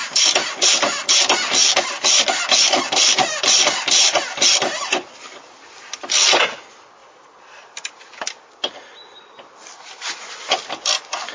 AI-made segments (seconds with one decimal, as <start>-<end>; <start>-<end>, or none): 3.0-4.2; 7.0-11.3